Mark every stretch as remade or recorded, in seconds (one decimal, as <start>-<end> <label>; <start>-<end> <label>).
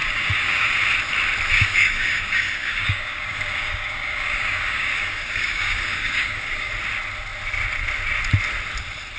0.0-0.7 remade; 0.7-1.5 recorded; 1.5-6.7 remade; 6.7-9.2 recorded